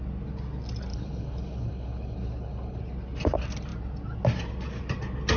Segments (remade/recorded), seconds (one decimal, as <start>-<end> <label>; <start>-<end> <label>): 0.0-0.9 recorded; 0.9-2.8 remade; 2.8-5.4 recorded